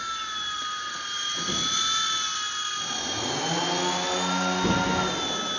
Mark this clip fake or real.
real